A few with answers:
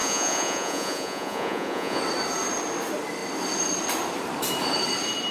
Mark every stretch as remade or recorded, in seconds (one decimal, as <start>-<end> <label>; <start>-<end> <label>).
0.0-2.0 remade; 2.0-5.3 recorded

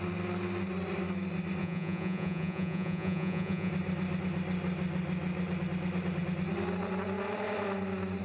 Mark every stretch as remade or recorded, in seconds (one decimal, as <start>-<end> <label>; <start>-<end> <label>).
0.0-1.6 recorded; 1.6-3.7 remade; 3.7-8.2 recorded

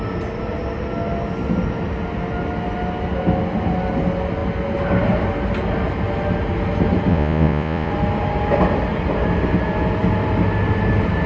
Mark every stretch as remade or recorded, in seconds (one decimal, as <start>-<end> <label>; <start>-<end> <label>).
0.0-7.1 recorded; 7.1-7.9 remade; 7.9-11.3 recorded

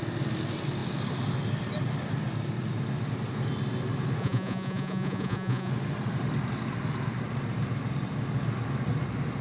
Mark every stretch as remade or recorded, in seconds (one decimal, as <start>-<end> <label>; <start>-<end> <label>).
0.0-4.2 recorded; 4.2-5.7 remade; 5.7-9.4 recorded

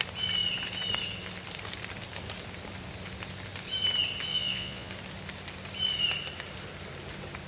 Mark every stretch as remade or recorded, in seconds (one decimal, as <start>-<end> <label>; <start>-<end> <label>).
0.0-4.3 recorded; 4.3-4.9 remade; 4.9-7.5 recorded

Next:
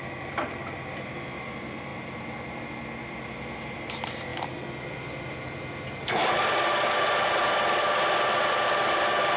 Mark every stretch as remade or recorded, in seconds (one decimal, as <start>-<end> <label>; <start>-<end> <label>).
0.0-9.4 recorded

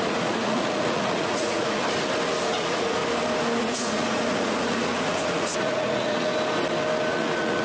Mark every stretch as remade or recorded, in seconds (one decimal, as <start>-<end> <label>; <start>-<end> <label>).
0.0-1.8 remade; 1.8-2.4 recorded; 2.4-3.0 remade; 3.0-3.6 recorded; 3.6-6.3 remade; 6.3-7.1 recorded; 7.1-7.6 remade